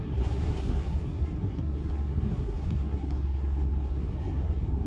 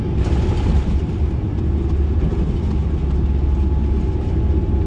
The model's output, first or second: first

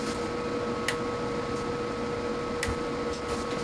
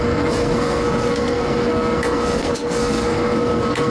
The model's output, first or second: second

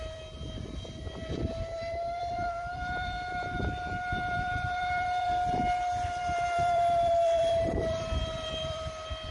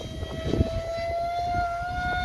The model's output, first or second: first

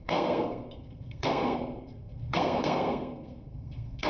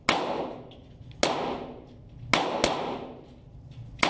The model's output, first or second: first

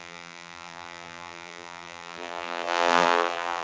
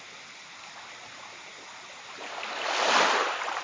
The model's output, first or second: first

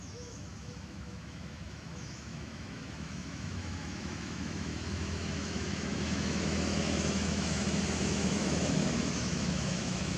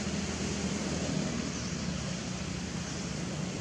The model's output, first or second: first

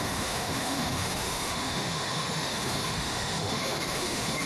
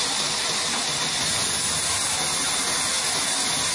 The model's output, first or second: first